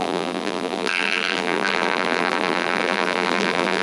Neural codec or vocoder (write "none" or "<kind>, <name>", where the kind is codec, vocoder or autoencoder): vocoder, BigVGAN v2